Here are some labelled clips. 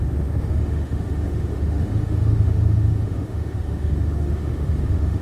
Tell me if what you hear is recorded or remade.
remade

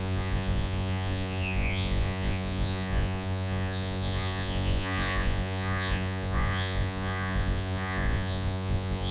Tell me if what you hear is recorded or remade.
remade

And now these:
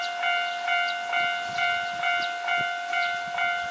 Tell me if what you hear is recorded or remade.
recorded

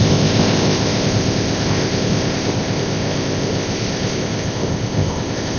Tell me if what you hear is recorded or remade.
remade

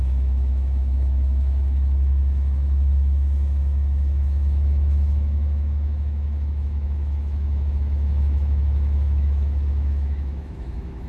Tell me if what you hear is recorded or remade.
remade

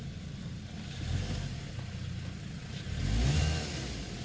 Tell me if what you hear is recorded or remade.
recorded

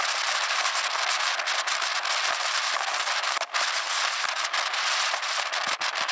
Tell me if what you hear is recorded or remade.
recorded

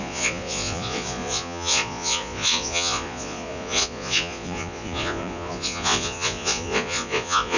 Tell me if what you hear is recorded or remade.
remade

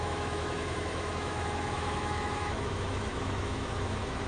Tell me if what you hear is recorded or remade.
remade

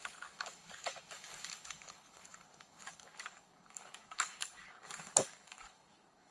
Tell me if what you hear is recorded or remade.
remade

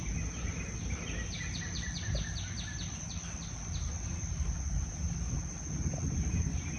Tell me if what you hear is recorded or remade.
recorded